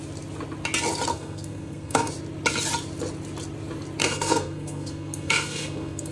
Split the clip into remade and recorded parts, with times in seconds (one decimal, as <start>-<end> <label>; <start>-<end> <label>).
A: 0.0-1.1 recorded; 1.1-2.1 remade; 2.1-4.0 recorded; 4.0-6.1 remade